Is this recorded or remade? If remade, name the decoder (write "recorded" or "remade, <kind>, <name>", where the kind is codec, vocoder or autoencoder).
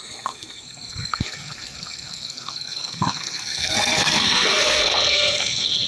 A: remade, codec, SNAC